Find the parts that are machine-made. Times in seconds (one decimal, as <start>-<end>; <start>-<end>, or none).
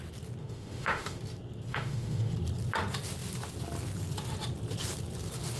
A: 0.4-1.2; 1.7-2.3